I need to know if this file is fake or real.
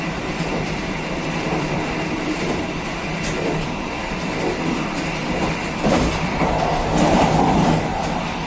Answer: fake